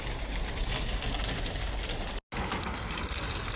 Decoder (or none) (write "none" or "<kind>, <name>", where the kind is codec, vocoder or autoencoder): none